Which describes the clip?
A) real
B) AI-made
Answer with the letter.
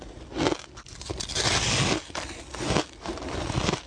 A